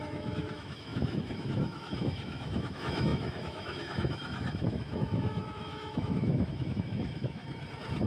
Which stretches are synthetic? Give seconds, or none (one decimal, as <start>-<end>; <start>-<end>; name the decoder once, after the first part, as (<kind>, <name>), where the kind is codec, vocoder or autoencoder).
0.0-7.4 (autoencoder, DAC-VAE)